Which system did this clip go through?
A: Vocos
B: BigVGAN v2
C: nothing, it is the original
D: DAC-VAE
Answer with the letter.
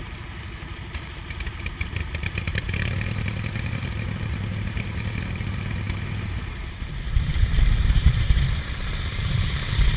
B